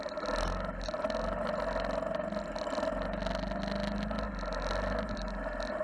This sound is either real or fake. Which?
real